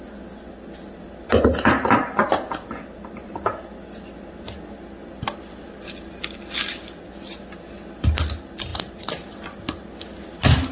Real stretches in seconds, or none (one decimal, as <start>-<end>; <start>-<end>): 0.0-10.7